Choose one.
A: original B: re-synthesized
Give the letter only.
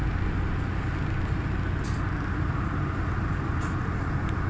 A